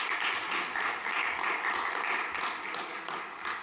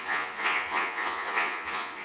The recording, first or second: first